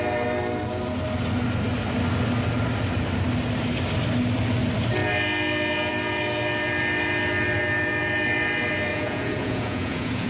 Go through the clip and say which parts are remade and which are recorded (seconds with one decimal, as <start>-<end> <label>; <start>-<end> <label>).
0.0-8.9 recorded; 8.9-10.3 remade